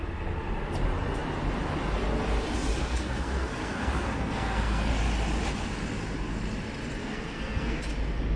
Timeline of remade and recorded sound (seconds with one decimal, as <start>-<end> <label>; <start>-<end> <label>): 0.0-2.7 recorded; 2.7-4.9 remade; 4.9-7.0 recorded; 7.0-7.8 remade; 7.8-8.4 recorded